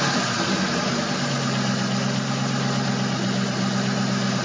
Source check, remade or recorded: recorded